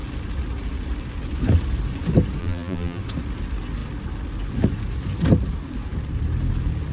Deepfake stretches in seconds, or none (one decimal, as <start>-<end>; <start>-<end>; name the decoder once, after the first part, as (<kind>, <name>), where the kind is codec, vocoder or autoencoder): 2.4-3.0 (vocoder, BigVGAN v2)